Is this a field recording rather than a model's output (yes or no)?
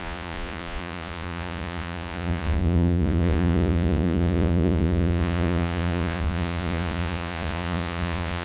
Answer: no